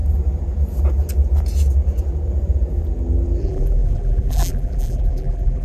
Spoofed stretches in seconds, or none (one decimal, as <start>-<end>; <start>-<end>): 3.4-5.6